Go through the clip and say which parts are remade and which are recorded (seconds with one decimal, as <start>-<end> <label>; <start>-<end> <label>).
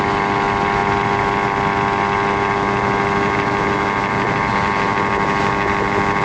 0.0-6.2 recorded